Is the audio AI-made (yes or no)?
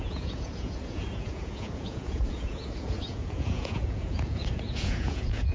yes